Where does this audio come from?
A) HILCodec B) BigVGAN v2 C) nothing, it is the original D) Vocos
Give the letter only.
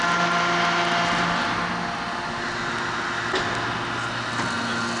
C